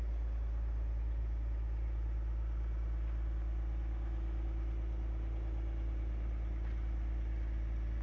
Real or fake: real